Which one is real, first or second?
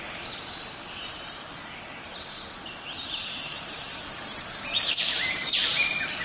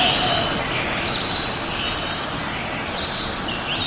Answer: second